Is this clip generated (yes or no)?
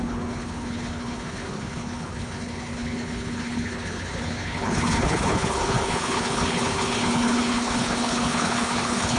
yes